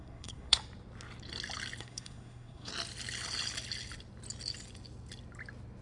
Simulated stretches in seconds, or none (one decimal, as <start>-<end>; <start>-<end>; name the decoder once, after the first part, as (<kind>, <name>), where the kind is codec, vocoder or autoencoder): 0.0-0.6 (codec, SNAC); 1.8-2.7